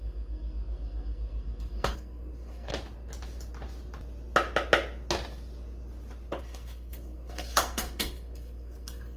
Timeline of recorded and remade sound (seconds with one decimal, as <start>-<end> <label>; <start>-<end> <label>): 0.0-2.7 remade; 2.7-6.4 recorded; 6.4-9.2 remade